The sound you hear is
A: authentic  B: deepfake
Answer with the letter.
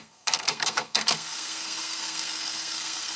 B